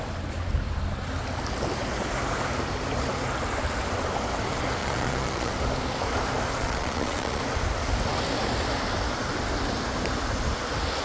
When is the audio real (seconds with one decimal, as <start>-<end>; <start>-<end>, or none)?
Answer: 0.0-4.8; 5.5-6.6; 7.4-11.0